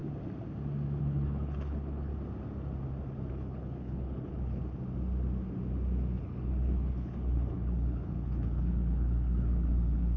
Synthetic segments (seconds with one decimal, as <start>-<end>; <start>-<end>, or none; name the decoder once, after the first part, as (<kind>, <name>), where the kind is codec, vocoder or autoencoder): 1.0-2.1 (codec, HILCodec); 3.3-4.6; 6.2-10.2